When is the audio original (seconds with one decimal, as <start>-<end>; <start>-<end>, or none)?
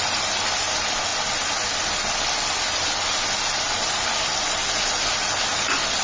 0.0-6.0